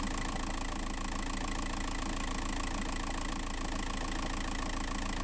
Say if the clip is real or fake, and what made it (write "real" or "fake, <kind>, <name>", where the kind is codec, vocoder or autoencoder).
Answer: real